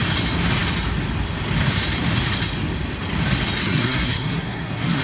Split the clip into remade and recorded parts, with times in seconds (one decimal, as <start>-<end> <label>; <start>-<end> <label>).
0.0-3.6 recorded; 3.6-5.0 remade